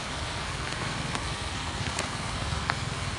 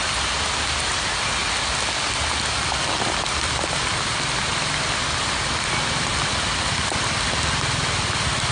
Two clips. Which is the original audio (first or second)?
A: second